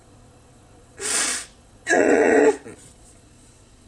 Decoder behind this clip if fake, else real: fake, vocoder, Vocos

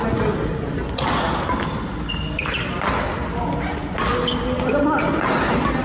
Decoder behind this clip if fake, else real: real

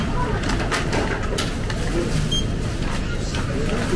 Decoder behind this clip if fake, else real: real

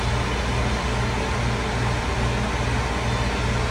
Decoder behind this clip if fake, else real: real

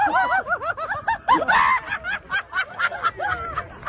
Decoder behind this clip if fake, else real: real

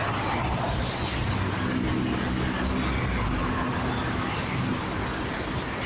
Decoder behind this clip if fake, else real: real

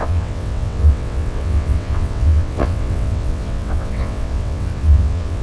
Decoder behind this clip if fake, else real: fake, vocoder, WaveNeXt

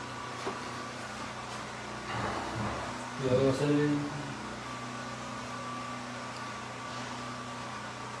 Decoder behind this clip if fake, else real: real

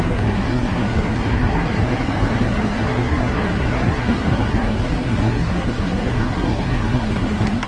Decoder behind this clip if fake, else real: fake, codec, SNAC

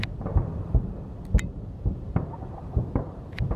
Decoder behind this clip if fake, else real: real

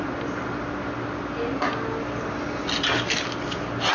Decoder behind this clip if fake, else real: real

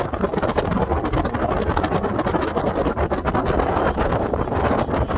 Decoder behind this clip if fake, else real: real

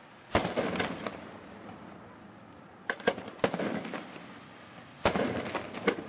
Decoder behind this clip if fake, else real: fake, vocoder, BigVGAN v2